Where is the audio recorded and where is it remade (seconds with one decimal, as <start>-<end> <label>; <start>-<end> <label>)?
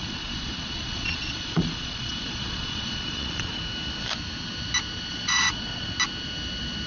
0.0-3.6 remade; 3.6-5.1 recorded; 5.1-5.9 remade; 5.9-6.9 recorded